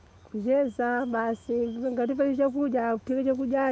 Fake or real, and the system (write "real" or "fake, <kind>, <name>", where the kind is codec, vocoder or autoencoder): fake, autoencoder, DAC-VAE